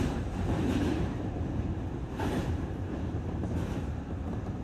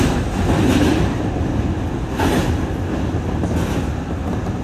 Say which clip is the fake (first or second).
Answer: first